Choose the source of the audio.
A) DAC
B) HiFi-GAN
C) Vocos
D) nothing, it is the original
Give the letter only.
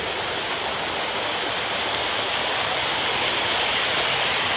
D